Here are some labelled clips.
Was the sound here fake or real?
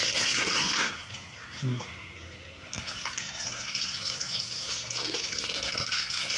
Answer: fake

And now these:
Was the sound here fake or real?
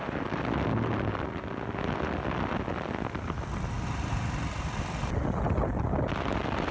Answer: real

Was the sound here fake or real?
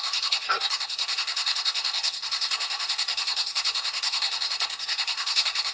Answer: fake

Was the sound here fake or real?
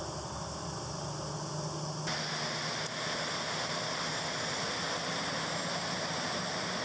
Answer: real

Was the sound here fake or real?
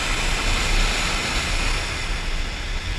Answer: real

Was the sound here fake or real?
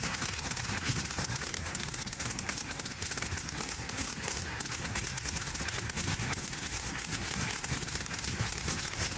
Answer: fake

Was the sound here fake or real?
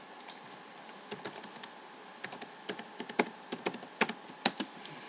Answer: real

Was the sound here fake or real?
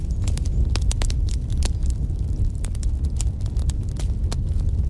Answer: real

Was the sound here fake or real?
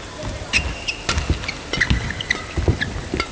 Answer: real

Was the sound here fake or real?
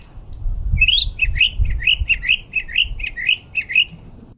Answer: real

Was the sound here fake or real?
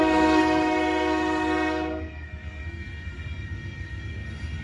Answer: fake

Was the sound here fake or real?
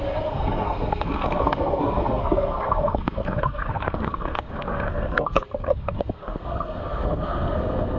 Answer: fake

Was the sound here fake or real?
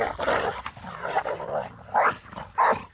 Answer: real